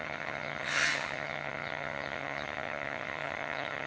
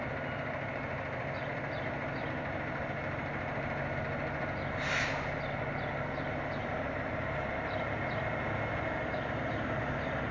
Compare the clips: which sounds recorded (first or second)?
second